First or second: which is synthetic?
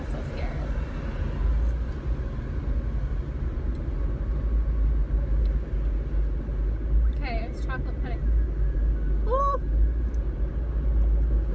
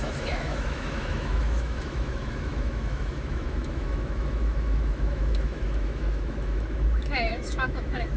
second